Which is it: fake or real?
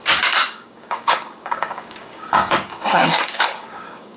fake